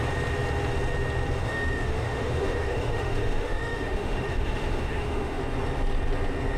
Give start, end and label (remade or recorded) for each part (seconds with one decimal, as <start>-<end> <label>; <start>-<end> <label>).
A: 0.0-1.4 recorded; 1.4-5.4 remade; 5.4-6.6 recorded

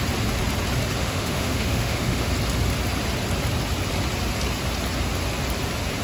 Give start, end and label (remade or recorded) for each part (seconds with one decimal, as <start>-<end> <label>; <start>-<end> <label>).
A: 0.0-1.0 recorded; 1.0-2.3 remade; 2.3-6.0 recorded